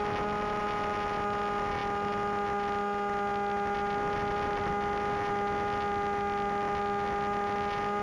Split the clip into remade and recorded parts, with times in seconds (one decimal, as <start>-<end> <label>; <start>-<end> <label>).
0.0-8.0 recorded